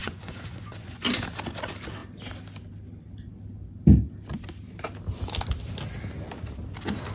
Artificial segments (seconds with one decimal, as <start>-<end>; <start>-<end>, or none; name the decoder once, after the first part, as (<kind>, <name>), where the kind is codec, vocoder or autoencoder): 0.0-1.0 (vocoder, Vocos)